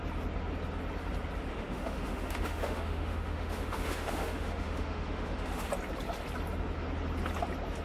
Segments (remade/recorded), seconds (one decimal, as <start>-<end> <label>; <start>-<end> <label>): 0.0-1.5 recorded; 1.5-5.7 remade; 5.7-7.8 recorded